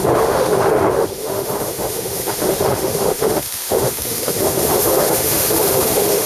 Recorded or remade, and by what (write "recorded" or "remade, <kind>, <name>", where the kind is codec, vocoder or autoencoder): remade, autoencoder, DAC-VAE